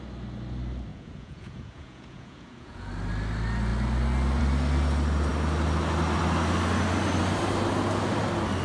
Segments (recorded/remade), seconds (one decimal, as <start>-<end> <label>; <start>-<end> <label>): 0.0-0.9 recorded; 0.9-2.9 remade; 2.9-8.6 recorded